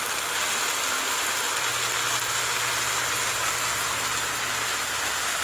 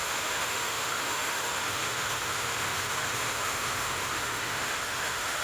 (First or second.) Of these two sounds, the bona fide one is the first